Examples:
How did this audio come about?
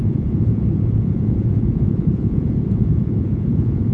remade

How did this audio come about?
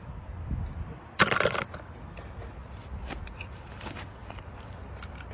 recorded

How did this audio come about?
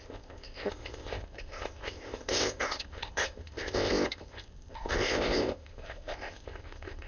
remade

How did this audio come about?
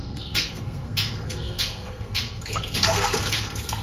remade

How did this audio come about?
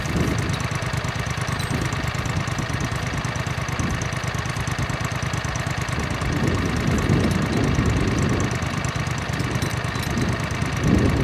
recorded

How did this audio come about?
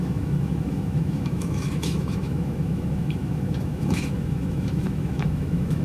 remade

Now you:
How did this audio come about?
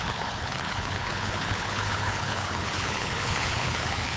remade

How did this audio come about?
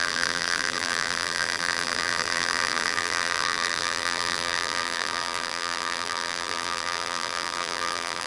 remade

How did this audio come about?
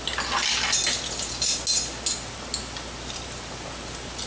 recorded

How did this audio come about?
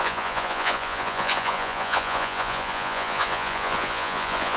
remade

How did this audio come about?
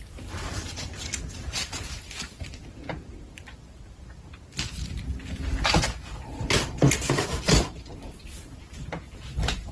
recorded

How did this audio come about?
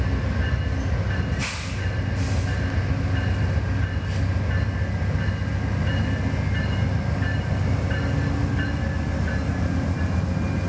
recorded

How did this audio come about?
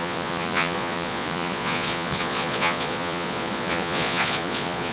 remade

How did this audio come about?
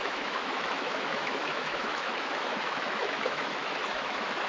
remade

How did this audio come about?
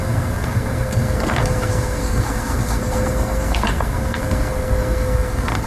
remade